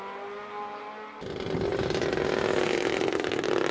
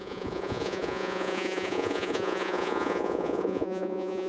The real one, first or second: first